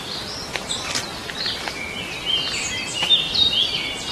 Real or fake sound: real